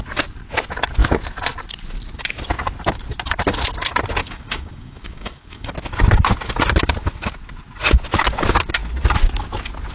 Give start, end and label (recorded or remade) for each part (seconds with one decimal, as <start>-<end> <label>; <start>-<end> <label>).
0.0-4.2 recorded; 4.2-5.7 remade; 5.7-9.9 recorded